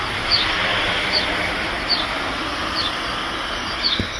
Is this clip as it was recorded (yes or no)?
yes